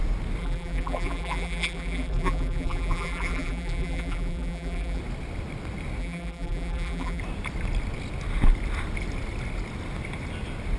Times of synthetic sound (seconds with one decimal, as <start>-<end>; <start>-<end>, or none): 0.4-5.0; 6.0-7.2